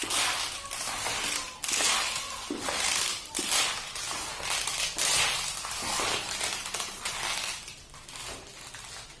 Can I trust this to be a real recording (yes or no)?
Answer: yes